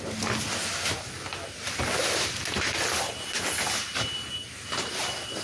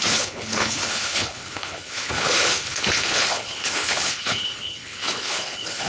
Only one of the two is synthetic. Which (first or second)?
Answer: second